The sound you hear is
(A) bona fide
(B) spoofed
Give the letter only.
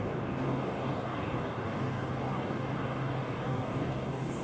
B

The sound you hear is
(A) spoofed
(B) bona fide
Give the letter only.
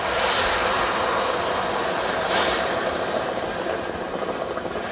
B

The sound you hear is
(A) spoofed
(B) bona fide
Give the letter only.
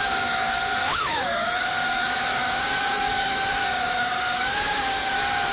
A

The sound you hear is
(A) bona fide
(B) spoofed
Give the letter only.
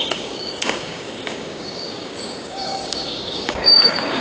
B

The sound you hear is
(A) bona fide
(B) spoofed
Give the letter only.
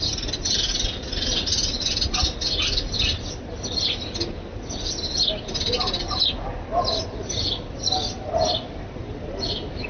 A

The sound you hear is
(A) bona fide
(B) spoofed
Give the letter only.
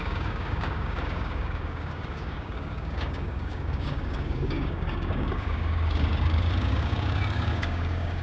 B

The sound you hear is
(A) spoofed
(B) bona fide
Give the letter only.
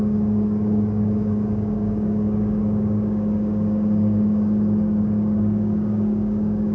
A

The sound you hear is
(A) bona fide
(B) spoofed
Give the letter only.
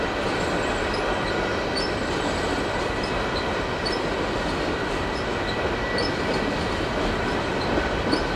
A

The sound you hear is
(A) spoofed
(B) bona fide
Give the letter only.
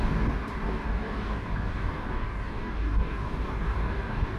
A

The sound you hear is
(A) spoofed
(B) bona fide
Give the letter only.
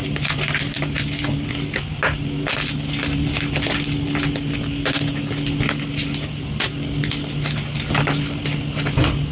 B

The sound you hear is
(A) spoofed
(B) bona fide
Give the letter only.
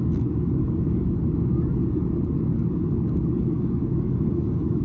A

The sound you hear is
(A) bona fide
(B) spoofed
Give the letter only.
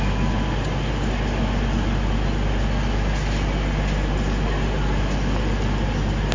A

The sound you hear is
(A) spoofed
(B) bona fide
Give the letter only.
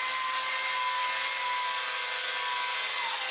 B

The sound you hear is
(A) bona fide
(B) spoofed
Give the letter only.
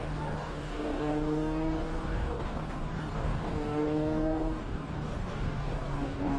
B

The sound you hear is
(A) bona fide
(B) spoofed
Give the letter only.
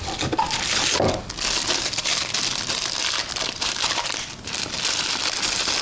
A